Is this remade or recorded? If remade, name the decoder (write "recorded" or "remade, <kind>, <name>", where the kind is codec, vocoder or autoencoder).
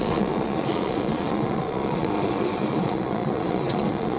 remade, vocoder, Vocos